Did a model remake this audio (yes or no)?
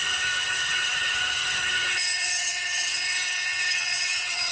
yes